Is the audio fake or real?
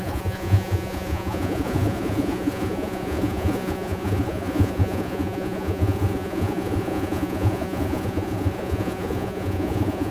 fake